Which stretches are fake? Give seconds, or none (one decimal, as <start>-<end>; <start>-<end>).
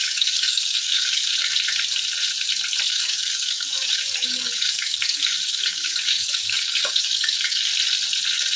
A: 0.0-1.3; 2.9-7.7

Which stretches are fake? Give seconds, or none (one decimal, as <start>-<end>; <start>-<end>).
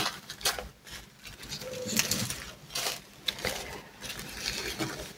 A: none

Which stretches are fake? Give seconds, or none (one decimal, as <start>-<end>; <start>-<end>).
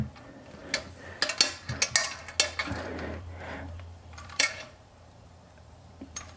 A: 2.6-6.4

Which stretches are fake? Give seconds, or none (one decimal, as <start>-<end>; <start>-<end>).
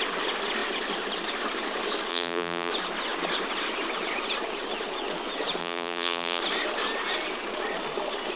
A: 2.1-2.7; 5.6-6.4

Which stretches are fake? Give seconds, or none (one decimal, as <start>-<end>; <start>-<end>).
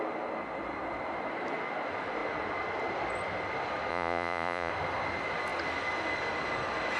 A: 3.9-4.7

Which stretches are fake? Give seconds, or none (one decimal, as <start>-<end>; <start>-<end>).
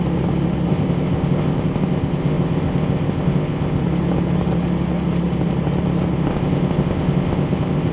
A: 0.7-3.8; 6.3-7.9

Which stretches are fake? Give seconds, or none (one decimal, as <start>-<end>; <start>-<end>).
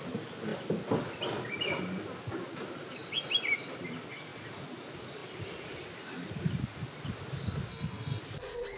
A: 7.7-8.2